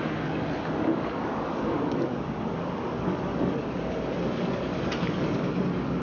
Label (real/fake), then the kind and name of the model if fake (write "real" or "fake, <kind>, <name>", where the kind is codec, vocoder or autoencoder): fake, codec, DAC